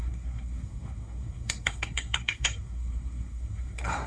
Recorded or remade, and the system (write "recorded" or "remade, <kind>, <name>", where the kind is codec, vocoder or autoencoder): remade, codec, SNAC